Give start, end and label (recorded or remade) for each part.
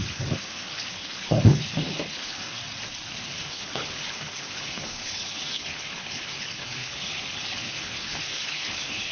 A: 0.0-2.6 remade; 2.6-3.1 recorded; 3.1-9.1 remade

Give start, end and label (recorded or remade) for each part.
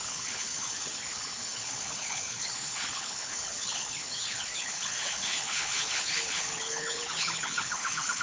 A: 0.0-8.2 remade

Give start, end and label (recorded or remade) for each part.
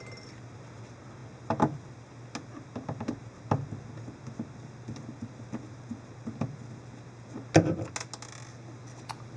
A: 0.0-9.4 recorded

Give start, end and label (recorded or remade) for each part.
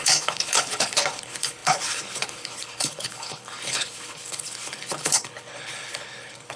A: 0.0-6.6 remade